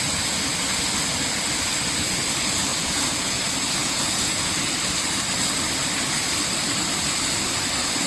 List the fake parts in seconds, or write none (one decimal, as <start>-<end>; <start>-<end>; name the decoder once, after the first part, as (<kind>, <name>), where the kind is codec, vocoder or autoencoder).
2.7-3.4 (vocoder, Vocos); 3.8-4.5